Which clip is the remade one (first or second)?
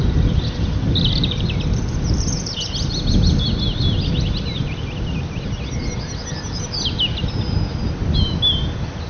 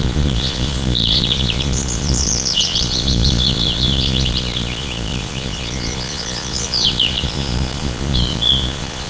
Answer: second